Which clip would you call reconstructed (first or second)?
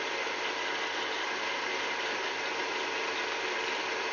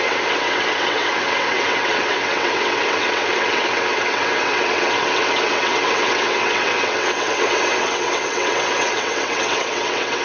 second